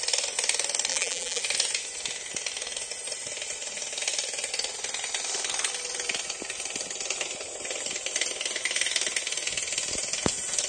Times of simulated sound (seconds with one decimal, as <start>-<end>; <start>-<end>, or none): 0.9-1.4